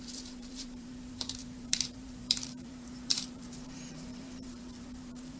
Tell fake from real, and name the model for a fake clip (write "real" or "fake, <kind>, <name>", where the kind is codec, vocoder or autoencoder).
fake, vocoder, BigVGAN v2